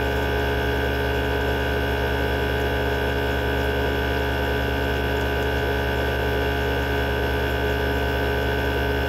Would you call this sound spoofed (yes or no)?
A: no